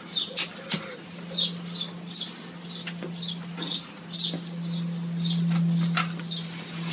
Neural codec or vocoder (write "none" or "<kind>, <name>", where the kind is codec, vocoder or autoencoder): none